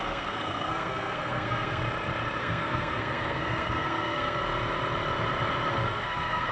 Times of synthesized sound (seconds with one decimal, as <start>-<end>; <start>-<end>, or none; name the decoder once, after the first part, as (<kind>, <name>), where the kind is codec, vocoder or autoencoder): 0.0-1.8 (codec, SNAC); 2.4-4.4; 5.7-6.5